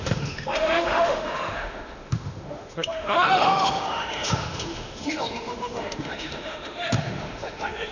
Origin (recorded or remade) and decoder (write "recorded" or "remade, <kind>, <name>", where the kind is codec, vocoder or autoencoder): remade, autoencoder, DAC-VAE